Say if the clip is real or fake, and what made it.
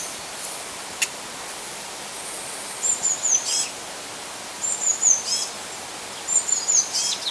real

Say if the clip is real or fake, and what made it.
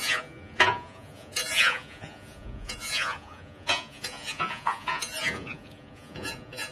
fake, vocoder, Vocos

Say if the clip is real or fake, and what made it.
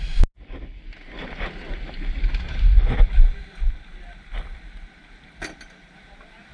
real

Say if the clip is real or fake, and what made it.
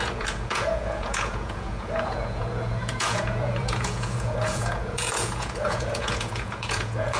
fake, vocoder, Vocos